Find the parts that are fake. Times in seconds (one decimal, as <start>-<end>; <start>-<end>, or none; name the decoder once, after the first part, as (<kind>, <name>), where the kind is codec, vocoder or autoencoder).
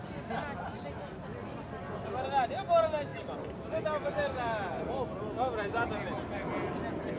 3.1-5.2 (vocoder, BigVGAN v2)